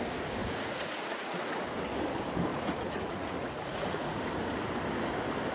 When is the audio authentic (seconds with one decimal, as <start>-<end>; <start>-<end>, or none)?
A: 0.0-0.4; 1.5-2.5; 4.2-5.5